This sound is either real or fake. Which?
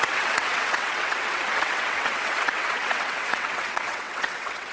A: fake